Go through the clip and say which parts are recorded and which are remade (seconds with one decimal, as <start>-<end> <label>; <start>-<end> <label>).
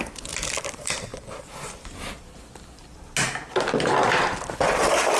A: 0.0-1.1 remade; 1.1-4.2 recorded; 4.2-5.2 remade